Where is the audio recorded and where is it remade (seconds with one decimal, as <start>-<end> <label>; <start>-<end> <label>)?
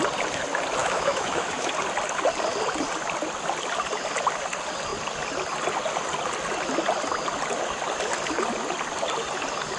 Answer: 0.0-0.8 recorded; 0.8-1.7 remade; 1.7-9.8 recorded